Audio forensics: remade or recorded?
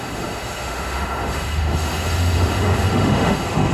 remade